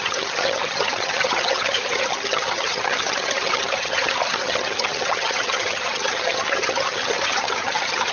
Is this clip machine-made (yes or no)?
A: yes